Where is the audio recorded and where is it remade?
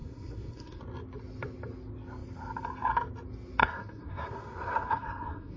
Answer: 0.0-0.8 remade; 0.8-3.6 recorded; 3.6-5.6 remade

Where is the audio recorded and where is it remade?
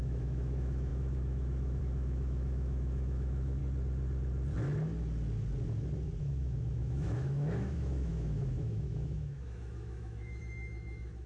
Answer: 0.0-3.6 remade; 3.6-6.2 recorded; 6.2-11.3 remade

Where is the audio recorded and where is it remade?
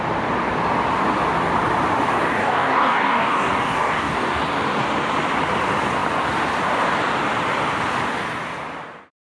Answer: 0.0-2.4 recorded; 2.4-4.4 remade; 4.4-9.3 recorded